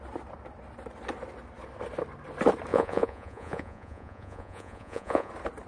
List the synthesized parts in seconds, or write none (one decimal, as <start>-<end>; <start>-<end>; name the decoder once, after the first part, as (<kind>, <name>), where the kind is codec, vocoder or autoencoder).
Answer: 2.7-5.3 (vocoder, Vocos)